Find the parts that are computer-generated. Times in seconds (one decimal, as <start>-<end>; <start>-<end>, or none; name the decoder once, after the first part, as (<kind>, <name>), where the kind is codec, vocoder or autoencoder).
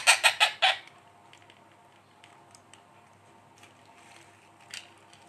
none